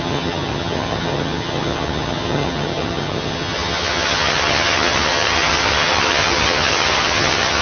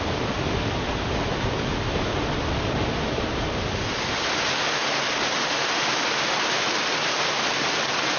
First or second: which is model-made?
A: first